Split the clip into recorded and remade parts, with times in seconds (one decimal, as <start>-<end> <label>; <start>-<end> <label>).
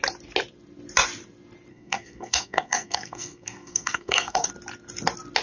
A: 0.0-1.7 recorded; 1.7-4.5 remade; 4.5-5.4 recorded